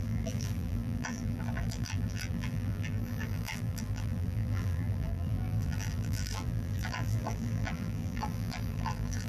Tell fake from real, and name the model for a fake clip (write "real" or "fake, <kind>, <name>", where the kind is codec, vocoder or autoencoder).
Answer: fake, vocoder, BigVGAN v2